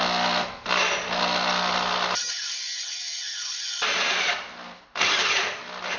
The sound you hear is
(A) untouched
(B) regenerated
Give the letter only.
A